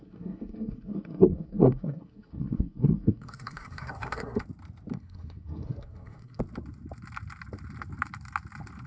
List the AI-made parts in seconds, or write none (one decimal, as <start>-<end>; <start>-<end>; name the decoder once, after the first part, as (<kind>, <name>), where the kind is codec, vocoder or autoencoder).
0.0-4.4 (codec, SNAC); 4.9-6.4

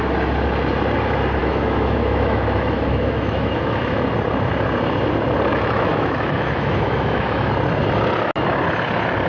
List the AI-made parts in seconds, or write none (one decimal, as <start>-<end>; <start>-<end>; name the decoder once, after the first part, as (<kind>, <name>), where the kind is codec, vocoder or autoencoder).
1.4-4.0 (autoencoder, DAC-VAE); 5.5-7.5

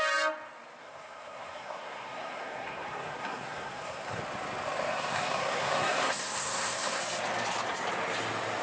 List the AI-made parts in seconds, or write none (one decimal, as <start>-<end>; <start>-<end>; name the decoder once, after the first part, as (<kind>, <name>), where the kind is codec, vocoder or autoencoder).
0.8-4.2 (codec, SNAC); 4.9-7.0

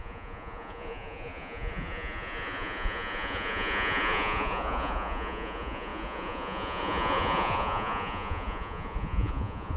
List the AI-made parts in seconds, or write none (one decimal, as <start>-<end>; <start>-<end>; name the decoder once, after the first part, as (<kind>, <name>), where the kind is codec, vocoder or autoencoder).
0.0-9.8 (vocoder, Vocos)

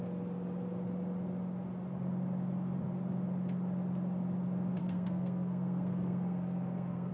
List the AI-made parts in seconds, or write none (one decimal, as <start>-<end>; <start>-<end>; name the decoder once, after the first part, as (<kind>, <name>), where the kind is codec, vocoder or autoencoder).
4.8-7.1 (codec, SNAC)